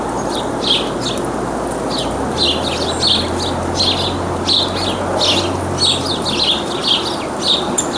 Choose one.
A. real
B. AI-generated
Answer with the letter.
A